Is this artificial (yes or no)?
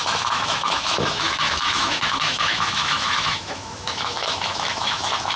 yes